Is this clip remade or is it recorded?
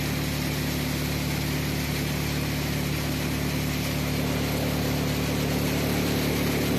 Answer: recorded